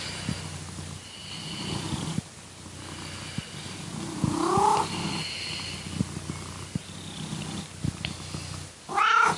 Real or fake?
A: real